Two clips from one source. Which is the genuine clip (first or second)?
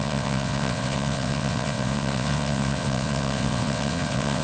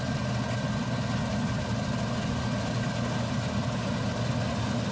second